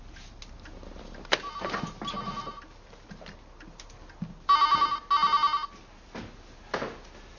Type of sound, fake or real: real